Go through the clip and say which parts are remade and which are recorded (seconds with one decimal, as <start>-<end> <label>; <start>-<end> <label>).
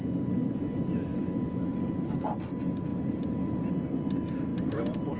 0.0-2.9 recorded; 2.9-3.7 remade; 3.7-4.5 recorded; 4.5-5.2 remade